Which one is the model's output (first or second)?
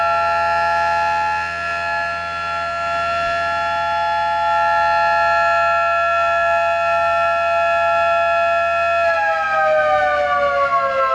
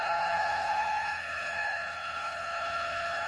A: second